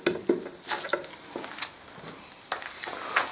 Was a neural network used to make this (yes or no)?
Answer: no